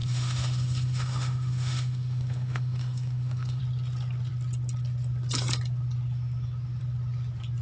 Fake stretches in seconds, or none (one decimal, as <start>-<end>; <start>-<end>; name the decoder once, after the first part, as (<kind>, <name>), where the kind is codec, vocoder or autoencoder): 0.0-3.6 (autoencoder, DAC-VAE)